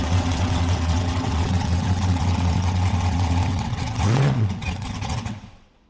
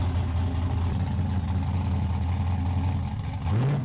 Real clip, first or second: second